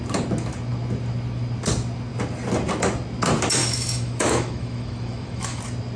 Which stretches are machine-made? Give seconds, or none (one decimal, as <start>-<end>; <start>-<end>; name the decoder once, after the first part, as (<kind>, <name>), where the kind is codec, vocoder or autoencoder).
3.6-5.6 (autoencoder, DAC-VAE)